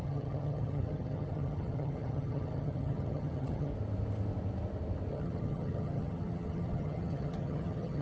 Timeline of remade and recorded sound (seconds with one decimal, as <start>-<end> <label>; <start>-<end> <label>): 0.0-3.7 remade; 3.7-5.1 recorded; 5.1-8.0 remade